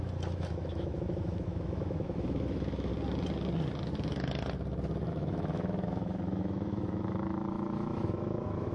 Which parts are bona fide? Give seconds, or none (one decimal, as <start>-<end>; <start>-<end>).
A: 2.9-5.1